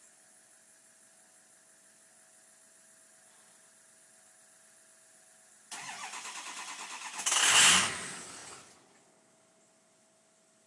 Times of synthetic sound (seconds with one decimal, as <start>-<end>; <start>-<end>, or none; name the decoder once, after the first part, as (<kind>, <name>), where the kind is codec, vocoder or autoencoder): none